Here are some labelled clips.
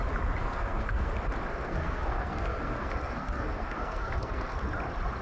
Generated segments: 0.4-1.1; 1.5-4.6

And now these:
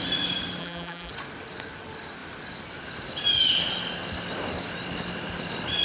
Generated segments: 0.6-1.1